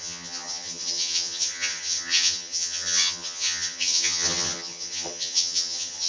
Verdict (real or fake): fake